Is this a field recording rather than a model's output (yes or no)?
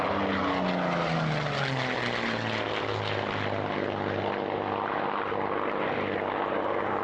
yes